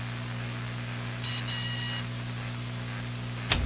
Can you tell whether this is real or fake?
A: real